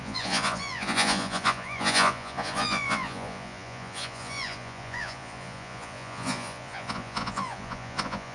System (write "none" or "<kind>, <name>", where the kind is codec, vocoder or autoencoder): vocoder, Vocos